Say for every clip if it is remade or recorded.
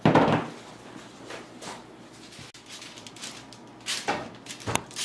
recorded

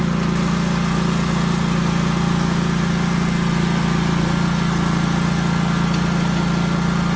recorded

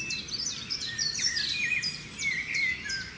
recorded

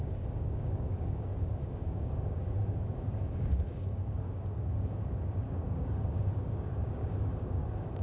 remade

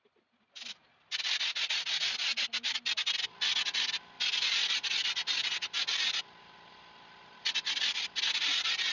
recorded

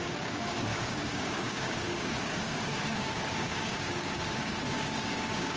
remade